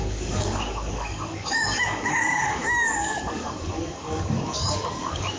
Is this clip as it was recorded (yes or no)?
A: no